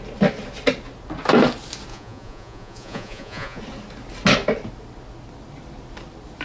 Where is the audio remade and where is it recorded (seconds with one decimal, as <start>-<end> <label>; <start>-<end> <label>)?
0.0-1.9 recorded; 1.9-3.6 remade; 3.6-6.4 recorded